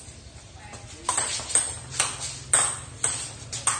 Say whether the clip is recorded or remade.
recorded